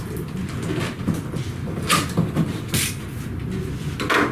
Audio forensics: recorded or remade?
recorded